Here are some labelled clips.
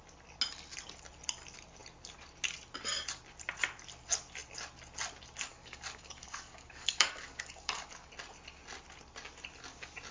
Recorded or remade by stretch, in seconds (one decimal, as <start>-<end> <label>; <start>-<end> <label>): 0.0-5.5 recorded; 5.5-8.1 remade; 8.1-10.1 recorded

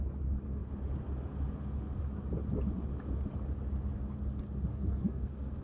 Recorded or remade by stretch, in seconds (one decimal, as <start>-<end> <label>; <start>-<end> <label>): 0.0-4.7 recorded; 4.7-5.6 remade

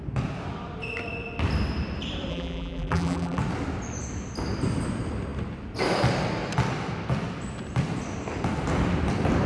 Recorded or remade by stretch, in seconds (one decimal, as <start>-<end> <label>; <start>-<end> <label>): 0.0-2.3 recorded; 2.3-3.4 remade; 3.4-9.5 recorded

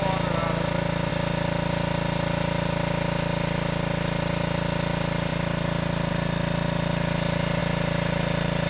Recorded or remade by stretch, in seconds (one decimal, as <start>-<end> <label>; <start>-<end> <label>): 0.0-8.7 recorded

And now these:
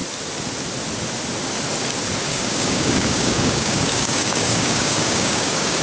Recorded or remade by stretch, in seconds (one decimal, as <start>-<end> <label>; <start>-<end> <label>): 0.0-2.3 recorded; 2.3-5.8 remade